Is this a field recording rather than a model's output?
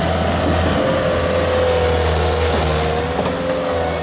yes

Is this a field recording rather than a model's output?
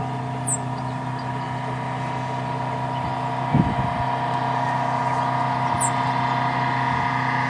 yes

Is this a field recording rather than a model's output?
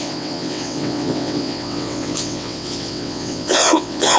no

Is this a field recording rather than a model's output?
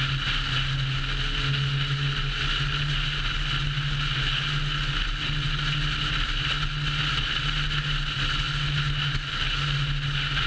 yes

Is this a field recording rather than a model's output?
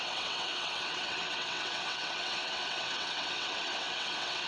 no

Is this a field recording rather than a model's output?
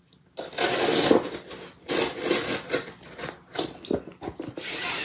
yes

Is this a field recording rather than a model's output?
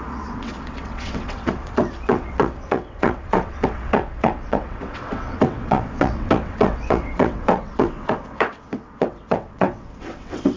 no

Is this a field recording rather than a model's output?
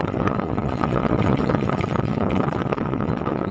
no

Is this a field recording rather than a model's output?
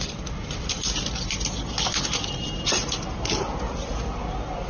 yes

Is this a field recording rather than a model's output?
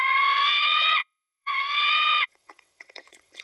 no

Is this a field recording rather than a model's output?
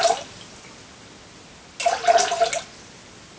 yes